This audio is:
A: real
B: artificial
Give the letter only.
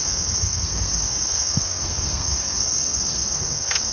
B